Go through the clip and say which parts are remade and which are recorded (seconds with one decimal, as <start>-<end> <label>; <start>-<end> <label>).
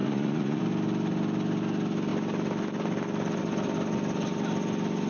0.0-0.6 remade; 0.6-5.1 recorded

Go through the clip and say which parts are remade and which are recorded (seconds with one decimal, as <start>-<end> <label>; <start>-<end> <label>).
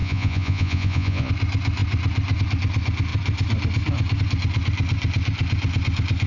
0.0-1.3 remade; 1.3-6.3 recorded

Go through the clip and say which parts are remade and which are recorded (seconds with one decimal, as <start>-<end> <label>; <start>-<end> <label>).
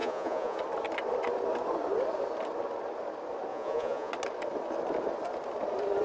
0.0-0.6 remade; 0.6-3.5 recorded; 3.5-4.1 remade; 4.1-6.0 recorded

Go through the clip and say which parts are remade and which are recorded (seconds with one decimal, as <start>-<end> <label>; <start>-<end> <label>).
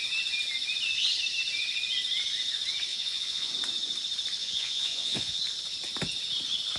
0.0-2.9 recorded; 2.9-3.5 remade; 3.5-4.4 recorded; 4.4-5.4 remade; 5.4-6.8 recorded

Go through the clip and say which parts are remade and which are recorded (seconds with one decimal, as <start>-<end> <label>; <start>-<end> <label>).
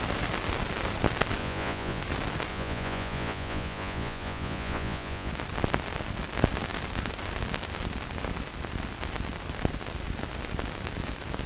0.0-1.4 recorded; 1.4-2.0 remade; 2.0-2.5 recorded; 2.5-5.3 remade; 5.3-11.5 recorded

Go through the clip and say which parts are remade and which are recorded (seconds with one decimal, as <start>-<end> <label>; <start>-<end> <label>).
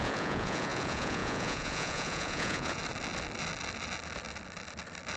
0.0-2.8 remade; 2.8-5.2 recorded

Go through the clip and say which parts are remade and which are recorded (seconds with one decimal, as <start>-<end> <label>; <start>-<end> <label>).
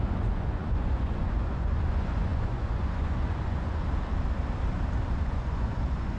0.0-3.8 remade; 3.8-5.2 recorded; 5.2-6.2 remade